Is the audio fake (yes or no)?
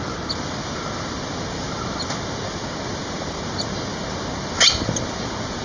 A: no